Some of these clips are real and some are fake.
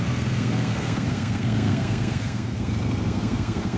fake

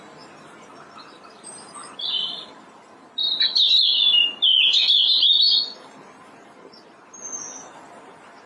real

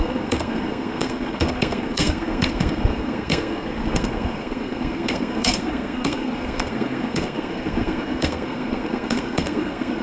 fake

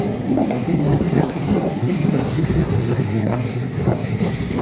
fake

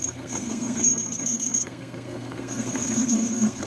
fake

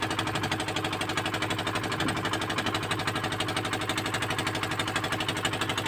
real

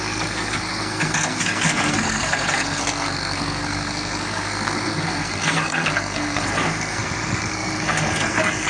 fake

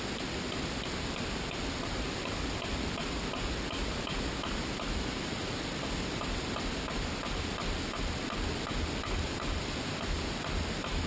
real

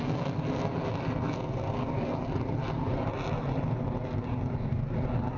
real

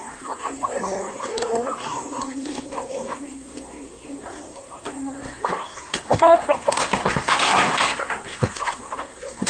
fake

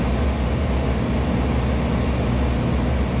real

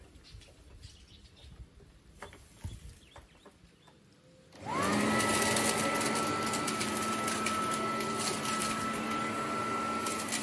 real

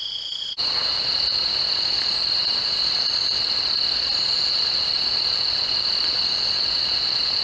real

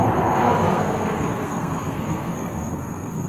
fake